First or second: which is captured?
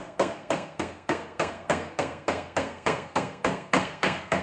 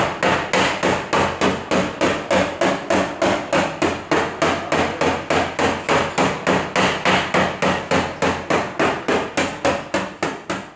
second